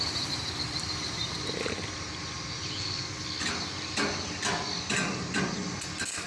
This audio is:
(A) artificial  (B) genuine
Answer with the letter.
B